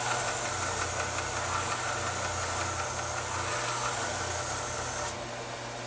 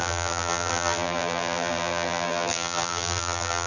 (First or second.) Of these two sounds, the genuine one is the first